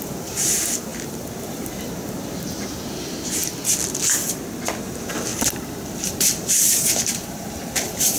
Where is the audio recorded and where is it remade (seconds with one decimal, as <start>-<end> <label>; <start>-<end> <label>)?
0.0-3.4 remade; 3.4-4.8 recorded; 4.8-5.3 remade; 5.3-6.0 recorded; 6.0-8.2 remade